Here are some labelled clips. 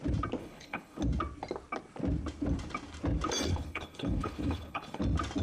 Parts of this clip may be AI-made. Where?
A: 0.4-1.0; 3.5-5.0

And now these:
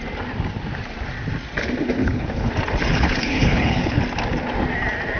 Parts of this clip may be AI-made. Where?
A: 2.0-2.5; 2.9-4.0

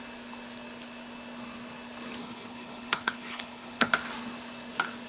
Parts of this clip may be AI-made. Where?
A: 2.2-3.9

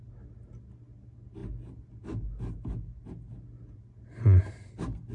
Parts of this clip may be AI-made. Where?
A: none

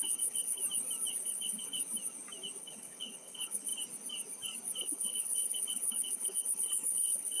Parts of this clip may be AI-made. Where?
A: 0.0-0.6; 1.2-1.8; 2.6-3.7; 4.8-7.4

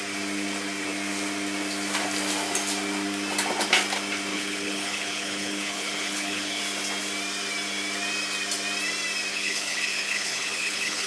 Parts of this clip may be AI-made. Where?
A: 4.3-6.6; 9.3-11.1